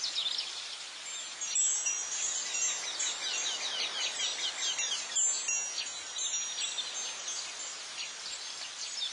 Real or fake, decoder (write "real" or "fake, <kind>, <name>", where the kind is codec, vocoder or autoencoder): real